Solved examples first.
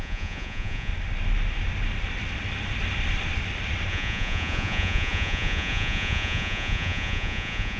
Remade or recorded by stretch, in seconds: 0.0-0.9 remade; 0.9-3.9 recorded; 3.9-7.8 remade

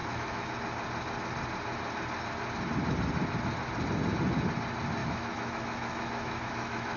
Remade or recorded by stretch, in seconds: 0.0-0.5 remade; 0.5-5.0 recorded; 5.0-7.0 remade